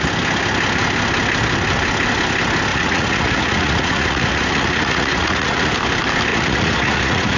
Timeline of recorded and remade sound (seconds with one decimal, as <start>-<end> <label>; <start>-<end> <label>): 0.0-2.7 recorded; 2.7-5.7 remade; 5.7-6.3 recorded; 6.3-7.4 remade